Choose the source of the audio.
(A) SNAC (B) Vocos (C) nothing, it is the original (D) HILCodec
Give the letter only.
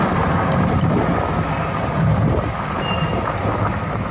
C